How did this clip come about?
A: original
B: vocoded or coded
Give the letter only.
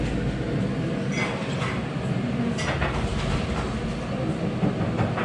A